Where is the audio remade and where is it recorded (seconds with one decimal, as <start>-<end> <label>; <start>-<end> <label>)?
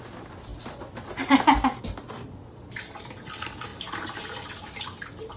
0.0-5.4 recorded